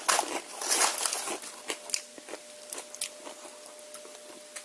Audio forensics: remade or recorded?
recorded